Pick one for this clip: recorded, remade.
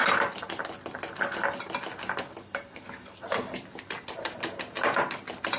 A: recorded